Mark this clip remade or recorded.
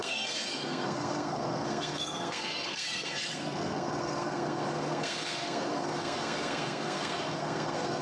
remade